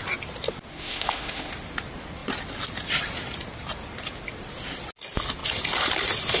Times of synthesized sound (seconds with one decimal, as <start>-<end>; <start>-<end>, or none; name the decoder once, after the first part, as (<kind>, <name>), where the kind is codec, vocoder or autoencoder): 0.7-1.5 (autoencoder, DAC-VAE)